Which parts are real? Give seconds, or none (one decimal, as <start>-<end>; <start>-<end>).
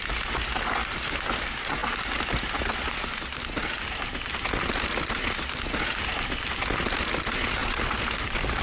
0.0-8.6